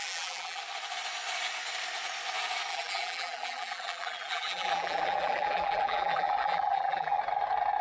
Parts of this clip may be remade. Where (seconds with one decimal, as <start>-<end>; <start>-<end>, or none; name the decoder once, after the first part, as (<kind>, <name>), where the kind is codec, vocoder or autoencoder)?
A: 0.0-0.6 (vocoder, BigVGAN v2); 2.7-7.2